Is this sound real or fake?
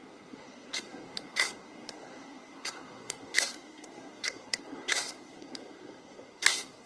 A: fake